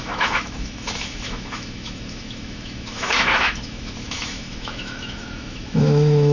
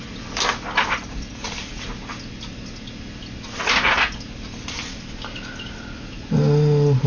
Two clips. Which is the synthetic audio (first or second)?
first